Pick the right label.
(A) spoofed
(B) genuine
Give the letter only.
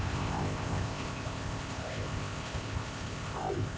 A